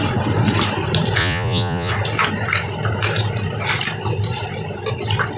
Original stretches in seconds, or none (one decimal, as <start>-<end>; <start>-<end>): 0.0-1.2; 1.9-5.4